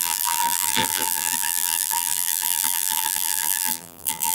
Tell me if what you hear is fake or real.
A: fake